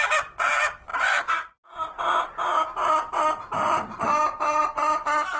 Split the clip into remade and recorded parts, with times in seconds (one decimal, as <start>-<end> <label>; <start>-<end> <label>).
0.0-5.4 recorded